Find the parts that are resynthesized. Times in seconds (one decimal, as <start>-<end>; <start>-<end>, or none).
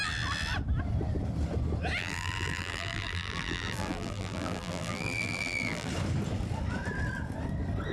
2.0-5.9